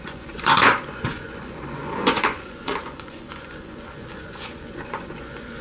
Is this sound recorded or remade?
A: remade